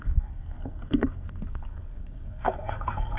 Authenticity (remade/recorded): remade